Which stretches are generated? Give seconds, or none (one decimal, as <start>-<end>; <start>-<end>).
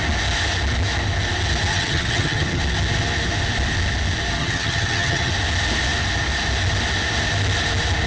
1.7-2.6; 4.4-5.3